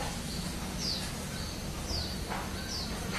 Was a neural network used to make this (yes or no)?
no